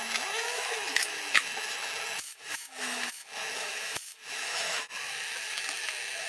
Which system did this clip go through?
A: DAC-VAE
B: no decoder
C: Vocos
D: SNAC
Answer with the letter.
A